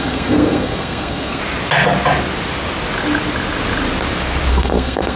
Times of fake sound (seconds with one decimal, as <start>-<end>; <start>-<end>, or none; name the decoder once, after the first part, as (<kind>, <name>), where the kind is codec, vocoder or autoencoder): 0.0-1.4 (codec, SNAC); 4.5-5.2